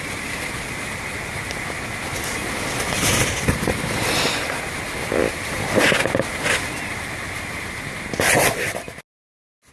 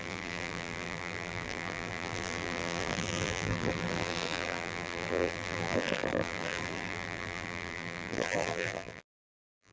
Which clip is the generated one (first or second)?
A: second